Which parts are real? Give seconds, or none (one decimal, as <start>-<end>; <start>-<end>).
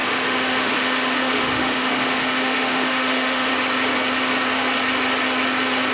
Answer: 3.5-5.9